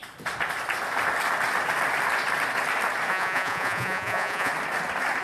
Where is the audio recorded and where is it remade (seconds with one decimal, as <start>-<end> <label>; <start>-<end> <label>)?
0.0-3.1 recorded; 3.1-4.5 remade; 4.5-5.2 recorded